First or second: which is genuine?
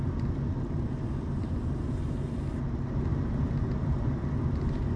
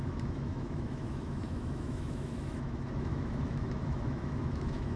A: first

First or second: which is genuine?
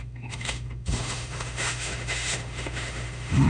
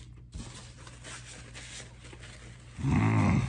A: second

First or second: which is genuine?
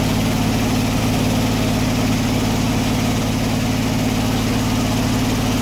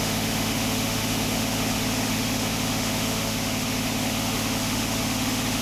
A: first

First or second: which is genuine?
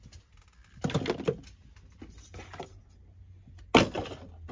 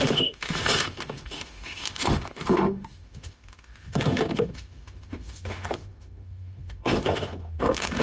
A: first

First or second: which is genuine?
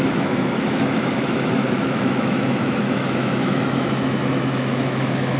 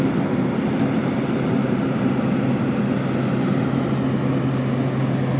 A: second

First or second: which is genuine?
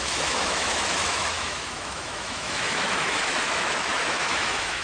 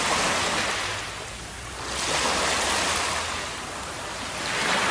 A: second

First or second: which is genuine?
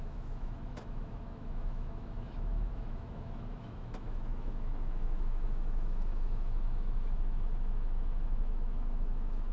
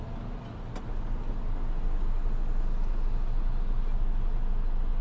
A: second